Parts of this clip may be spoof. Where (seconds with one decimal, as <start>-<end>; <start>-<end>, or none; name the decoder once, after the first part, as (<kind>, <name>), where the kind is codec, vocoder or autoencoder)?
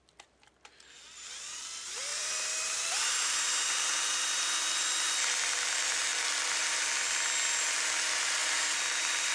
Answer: 2.1-3.6 (vocoder, BigVGAN v2)